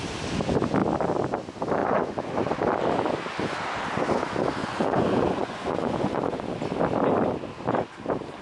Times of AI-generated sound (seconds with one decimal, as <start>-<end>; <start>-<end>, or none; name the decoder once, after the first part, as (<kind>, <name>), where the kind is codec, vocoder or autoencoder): 1.8-2.6 (vocoder, Vocos); 4.6-6.4